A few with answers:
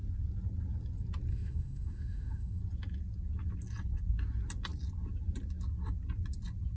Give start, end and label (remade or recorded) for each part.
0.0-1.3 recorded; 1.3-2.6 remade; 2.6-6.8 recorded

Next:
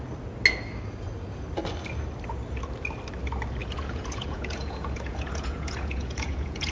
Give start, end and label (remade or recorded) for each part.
0.0-3.6 recorded; 3.6-6.7 remade

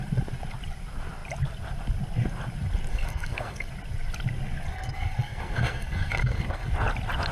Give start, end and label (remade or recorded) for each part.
0.0-2.9 recorded; 2.9-3.7 remade; 3.7-4.7 recorded; 4.7-6.7 remade; 6.7-7.3 recorded